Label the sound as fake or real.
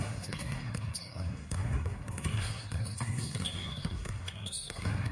fake